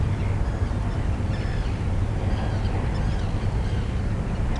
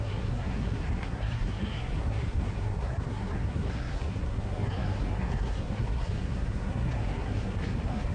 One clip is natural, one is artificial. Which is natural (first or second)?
first